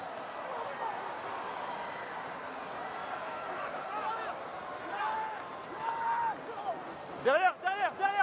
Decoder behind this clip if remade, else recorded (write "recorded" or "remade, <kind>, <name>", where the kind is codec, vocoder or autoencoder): recorded